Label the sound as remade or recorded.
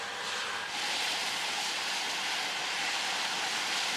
recorded